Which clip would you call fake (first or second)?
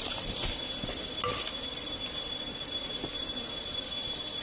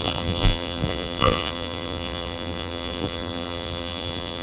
second